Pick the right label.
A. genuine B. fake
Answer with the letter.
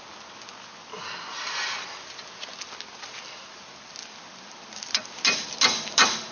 A